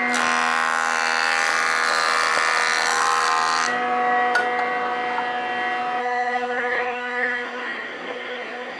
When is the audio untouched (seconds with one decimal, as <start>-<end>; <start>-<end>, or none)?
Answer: 0.0-6.0